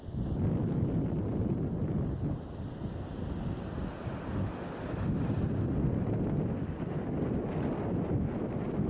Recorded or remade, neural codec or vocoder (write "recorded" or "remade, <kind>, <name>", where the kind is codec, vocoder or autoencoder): recorded